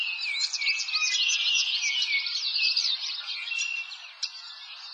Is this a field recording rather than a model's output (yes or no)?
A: yes